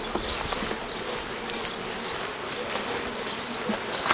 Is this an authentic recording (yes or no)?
yes